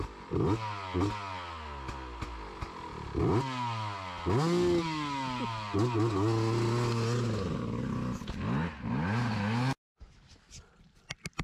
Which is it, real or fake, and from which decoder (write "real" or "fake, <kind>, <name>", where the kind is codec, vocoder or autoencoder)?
real